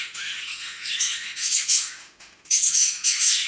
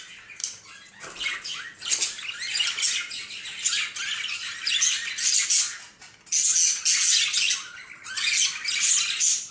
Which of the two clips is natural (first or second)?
second